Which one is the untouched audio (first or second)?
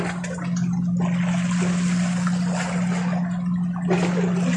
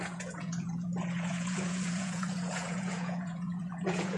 first